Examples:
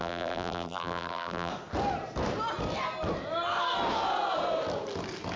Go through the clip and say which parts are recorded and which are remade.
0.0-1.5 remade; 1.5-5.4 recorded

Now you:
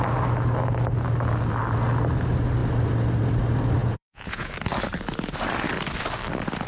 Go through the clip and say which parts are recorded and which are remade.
0.0-3.8 recorded; 3.8-4.5 remade; 4.5-6.7 recorded